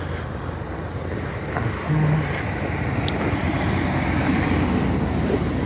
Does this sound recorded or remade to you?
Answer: remade